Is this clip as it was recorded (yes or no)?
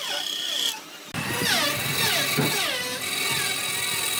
yes